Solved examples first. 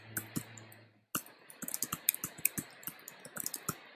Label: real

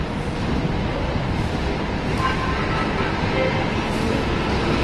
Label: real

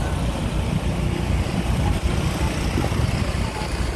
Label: real